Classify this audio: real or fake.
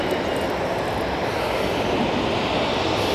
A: real